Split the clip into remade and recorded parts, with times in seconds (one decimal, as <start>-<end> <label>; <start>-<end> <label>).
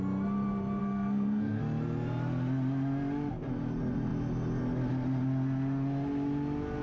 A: 0.0-0.8 recorded; 0.8-1.6 remade; 1.6-6.8 recorded